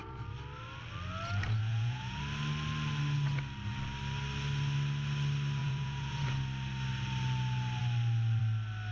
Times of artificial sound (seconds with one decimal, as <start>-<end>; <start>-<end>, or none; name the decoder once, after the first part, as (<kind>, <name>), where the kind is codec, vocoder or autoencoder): 1.6-2.2 (vocoder, Vocos); 5.6-6.3